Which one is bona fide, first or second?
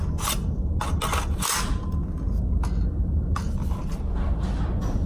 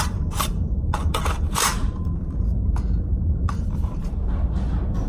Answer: first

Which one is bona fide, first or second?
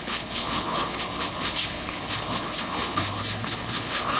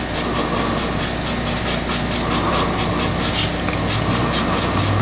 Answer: second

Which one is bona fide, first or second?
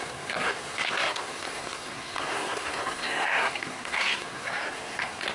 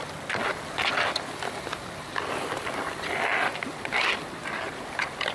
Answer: second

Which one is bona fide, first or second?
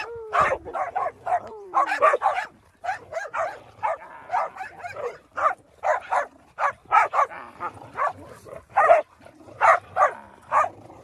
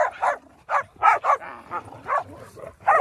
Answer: second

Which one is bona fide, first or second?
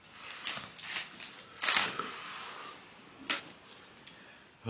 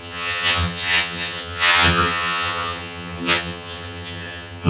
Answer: first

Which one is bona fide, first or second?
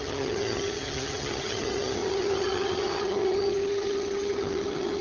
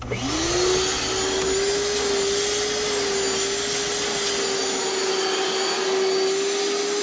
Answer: second